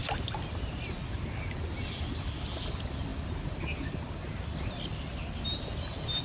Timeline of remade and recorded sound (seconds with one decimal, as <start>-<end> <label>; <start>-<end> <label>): 0.0-6.2 recorded